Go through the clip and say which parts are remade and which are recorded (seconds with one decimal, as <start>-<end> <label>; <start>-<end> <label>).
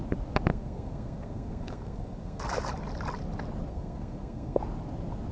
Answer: 0.0-0.5 recorded; 0.5-2.4 remade; 2.4-3.7 recorded; 3.7-4.6 remade; 4.6-5.3 recorded